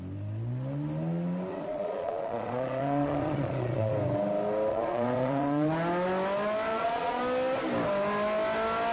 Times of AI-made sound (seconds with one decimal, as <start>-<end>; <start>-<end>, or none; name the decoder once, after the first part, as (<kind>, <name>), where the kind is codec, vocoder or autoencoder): 1.5-3.9 (vocoder, Vocos); 4.7-5.7; 6.7-7.2